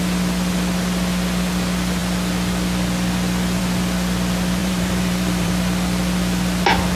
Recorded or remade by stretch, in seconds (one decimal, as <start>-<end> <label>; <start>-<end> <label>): 0.0-4.6 recorded; 4.6-5.5 remade; 5.5-7.0 recorded